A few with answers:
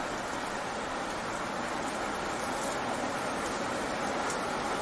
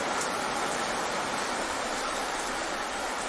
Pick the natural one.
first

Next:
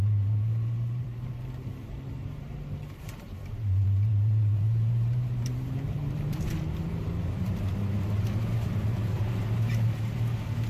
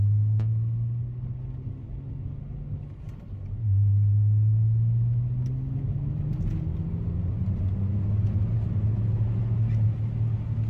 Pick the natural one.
second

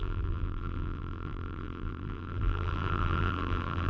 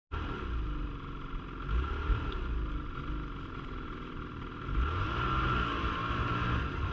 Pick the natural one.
second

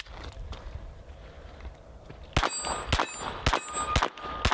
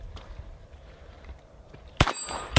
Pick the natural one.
first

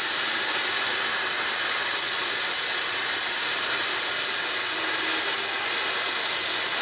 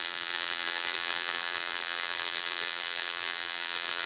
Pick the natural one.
first